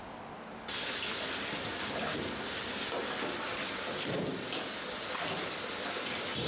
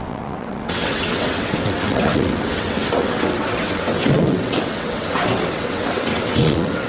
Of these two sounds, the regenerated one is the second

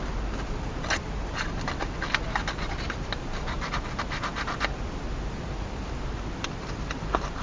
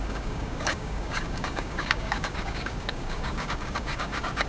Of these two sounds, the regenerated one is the second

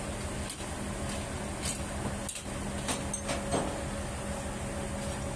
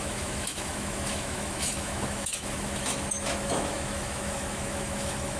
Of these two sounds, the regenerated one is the second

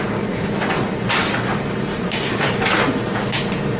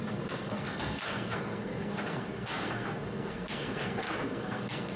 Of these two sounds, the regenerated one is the second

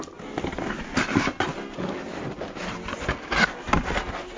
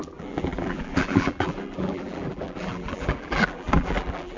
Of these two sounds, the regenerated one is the second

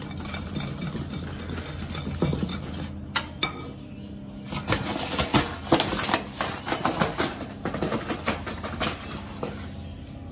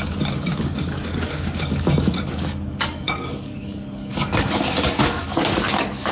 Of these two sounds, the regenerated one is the second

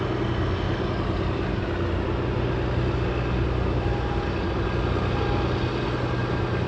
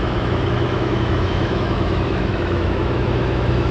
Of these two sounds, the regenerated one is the second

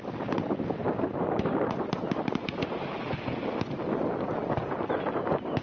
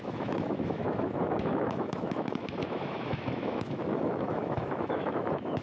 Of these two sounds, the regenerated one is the second